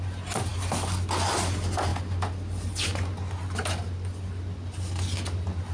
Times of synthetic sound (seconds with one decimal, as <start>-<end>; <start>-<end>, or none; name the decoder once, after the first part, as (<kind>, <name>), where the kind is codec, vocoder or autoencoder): none